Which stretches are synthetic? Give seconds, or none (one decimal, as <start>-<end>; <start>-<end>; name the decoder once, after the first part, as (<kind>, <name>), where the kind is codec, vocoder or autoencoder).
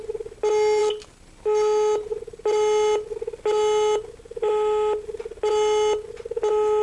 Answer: none